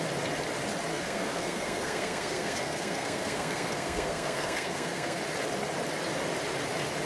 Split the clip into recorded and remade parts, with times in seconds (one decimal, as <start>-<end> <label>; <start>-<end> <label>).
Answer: 0.0-0.9 recorded; 0.9-5.2 remade; 5.2-7.1 recorded